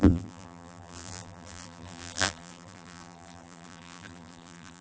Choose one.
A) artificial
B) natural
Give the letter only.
A